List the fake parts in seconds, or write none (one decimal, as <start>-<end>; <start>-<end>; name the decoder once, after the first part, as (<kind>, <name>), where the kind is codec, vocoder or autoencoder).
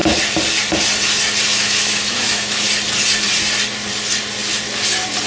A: 1.5-2.7 (autoencoder, DAC-VAE)